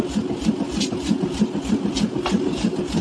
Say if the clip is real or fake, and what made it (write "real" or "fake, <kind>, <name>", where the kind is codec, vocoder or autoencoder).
real